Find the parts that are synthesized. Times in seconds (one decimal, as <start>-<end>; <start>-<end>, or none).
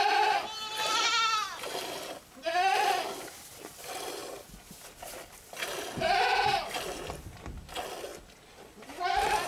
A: none